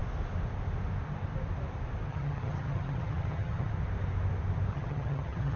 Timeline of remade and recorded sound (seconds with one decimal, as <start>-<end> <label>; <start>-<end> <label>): 0.0-2.1 recorded; 2.1-3.7 remade; 3.7-4.7 recorded; 4.7-5.6 remade